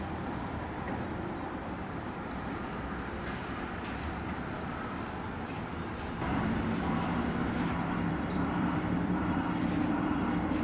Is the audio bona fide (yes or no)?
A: no